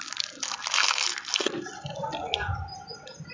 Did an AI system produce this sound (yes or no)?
no